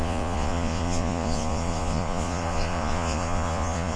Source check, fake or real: fake